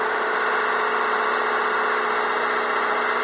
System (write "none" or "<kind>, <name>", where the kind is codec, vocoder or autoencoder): none